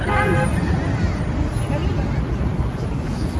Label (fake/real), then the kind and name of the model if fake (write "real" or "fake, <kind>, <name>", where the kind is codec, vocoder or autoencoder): real